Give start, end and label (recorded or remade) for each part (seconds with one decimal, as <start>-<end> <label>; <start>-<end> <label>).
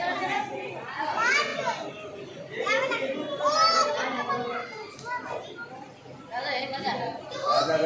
0.0-7.9 recorded